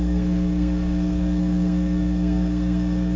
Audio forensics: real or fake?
fake